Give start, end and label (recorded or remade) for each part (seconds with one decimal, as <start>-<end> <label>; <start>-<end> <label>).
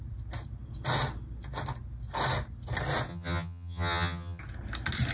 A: 0.0-3.1 recorded; 3.1-4.4 remade; 4.4-5.1 recorded